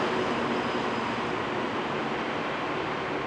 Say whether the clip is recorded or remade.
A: recorded